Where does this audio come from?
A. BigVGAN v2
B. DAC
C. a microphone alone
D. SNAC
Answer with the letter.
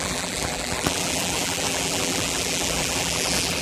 A